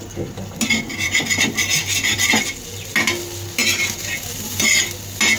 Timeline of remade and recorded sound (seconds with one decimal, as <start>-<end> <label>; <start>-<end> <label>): 0.0-5.4 recorded